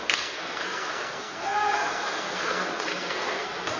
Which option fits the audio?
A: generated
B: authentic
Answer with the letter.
A